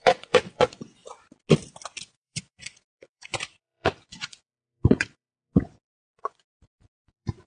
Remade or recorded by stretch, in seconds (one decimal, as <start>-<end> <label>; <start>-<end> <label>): 0.0-1.0 remade; 1.0-2.0 recorded; 2.0-7.5 remade

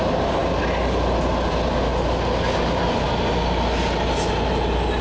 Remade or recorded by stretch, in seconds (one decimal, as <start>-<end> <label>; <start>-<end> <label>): 0.0-5.0 recorded

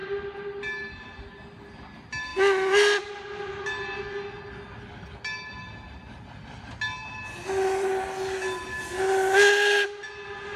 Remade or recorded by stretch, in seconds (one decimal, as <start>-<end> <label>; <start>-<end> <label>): 0.0-10.6 recorded

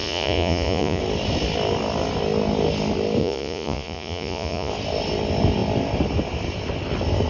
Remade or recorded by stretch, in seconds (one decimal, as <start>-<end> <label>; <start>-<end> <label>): 0.0-1.0 remade; 1.0-3.2 recorded; 3.2-4.7 remade; 4.7-7.3 recorded

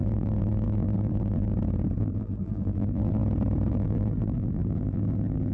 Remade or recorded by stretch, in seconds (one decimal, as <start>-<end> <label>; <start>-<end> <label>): 0.0-1.5 remade; 1.5-2.0 recorded; 2.0-3.2 remade; 3.2-3.7 recorded; 3.7-5.5 remade

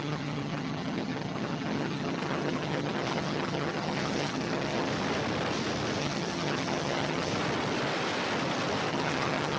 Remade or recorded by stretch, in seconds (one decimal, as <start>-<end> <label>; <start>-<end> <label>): 0.0-4.9 remade; 4.9-6.0 recorded; 6.0-7.3 remade; 7.3-8.9 recorded; 8.9-9.6 remade